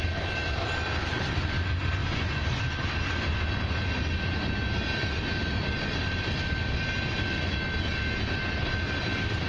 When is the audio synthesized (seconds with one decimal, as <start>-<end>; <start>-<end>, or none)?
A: 2.0-2.6